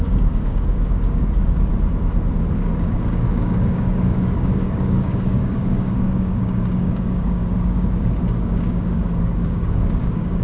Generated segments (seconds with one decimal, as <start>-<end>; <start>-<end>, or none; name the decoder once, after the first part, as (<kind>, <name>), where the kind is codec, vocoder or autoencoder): 0.0-1.7 (codec, DAC); 2.5-10.4